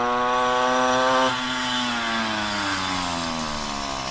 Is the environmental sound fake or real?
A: real